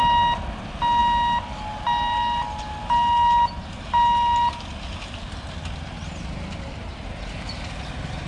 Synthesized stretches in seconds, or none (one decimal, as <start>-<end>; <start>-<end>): none